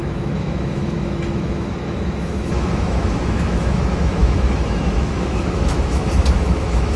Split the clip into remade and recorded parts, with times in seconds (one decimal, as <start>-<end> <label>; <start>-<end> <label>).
0.0-7.0 remade